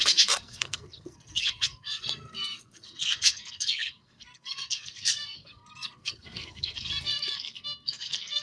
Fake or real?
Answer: fake